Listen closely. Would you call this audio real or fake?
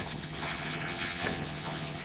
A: fake